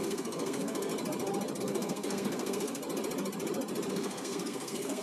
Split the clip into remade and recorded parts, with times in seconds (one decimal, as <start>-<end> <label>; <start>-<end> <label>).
0.0-0.9 remade; 0.9-1.6 recorded; 1.6-2.8 remade; 2.8-3.9 recorded; 3.9-5.0 remade